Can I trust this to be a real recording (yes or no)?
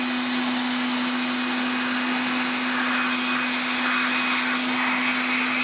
yes